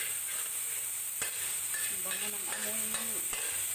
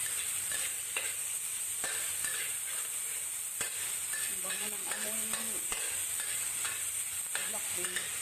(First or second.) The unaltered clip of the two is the first